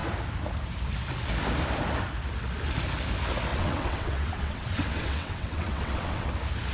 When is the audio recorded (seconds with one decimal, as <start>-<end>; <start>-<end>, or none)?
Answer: 0.0-3.5; 6.3-6.7